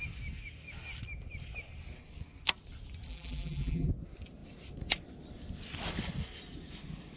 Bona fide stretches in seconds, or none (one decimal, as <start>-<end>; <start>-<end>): 0.0-3.1; 3.9-7.2